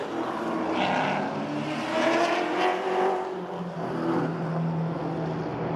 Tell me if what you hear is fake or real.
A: real